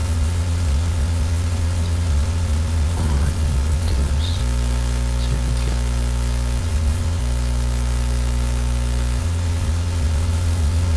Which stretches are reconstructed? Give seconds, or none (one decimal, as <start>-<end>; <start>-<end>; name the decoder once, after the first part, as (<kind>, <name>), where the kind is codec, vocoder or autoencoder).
0.0-4.4 (vocoder, Vocos); 6.6-7.2; 9.2-11.0